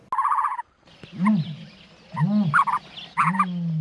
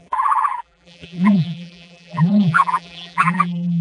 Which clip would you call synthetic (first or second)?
second